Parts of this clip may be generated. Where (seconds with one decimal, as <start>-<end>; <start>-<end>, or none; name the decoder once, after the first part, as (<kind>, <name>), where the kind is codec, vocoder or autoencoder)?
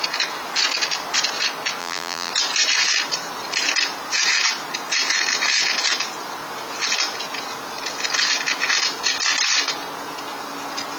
1.8-2.3 (vocoder, BigVGAN v2)